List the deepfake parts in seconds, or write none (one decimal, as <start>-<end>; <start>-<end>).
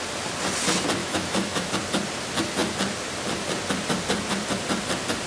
1.0-1.7